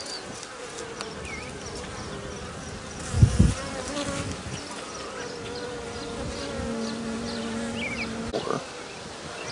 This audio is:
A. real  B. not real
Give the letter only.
A